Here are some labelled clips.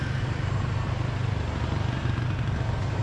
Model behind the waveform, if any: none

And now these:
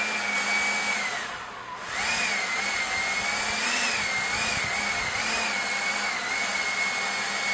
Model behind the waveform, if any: none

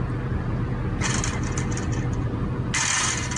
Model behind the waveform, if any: none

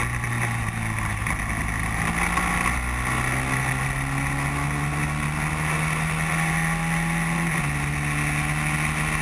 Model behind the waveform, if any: none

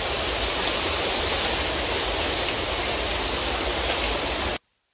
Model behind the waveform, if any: none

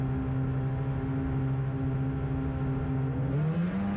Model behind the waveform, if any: none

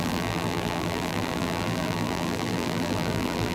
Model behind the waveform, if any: vocoder, BigVGAN v2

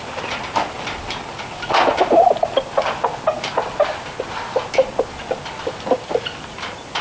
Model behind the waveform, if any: none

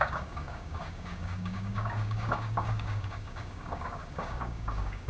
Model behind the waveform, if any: codec, DAC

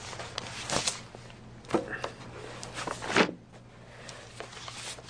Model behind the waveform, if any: none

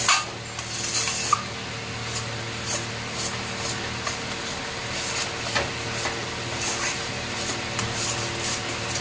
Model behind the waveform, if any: none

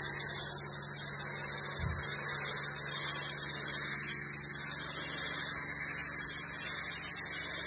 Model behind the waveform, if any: none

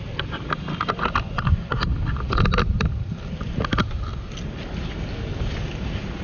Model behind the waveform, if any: none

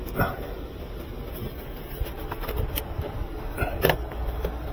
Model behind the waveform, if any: none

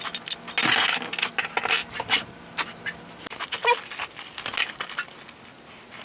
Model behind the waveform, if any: none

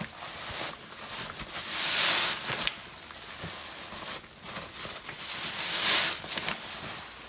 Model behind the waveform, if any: none